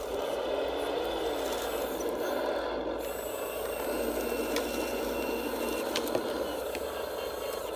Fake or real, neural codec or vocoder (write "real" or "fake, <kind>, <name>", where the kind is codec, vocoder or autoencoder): real